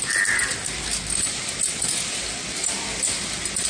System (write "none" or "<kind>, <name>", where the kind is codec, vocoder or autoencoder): none